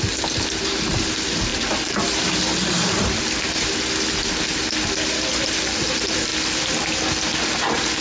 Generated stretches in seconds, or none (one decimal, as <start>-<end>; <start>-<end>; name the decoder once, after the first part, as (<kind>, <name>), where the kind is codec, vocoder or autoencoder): none